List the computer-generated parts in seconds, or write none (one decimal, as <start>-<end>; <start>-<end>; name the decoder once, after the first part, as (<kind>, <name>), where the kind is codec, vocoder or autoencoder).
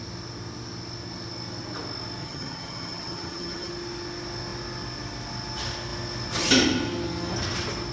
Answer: 2.2-3.7 (vocoder, HiFi-GAN)